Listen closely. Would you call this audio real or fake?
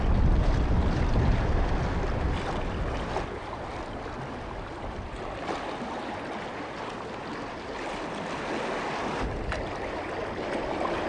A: real